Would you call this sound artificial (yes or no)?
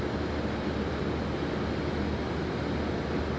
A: no